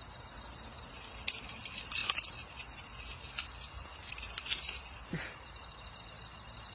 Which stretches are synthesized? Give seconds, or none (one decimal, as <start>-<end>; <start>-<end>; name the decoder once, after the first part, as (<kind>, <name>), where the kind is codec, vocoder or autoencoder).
none